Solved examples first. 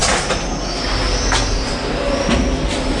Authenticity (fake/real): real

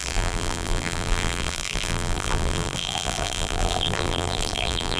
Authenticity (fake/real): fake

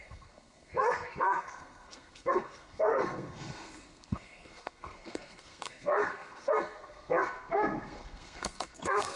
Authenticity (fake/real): fake